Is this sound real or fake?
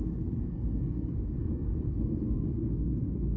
fake